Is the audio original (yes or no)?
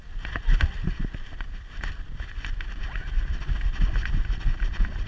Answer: yes